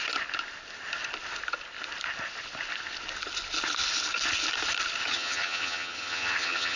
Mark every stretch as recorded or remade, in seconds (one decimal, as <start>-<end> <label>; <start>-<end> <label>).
0.0-5.0 recorded; 5.0-6.8 remade